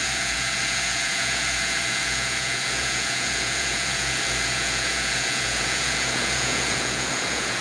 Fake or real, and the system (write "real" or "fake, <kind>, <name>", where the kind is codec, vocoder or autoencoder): fake, vocoder, Vocos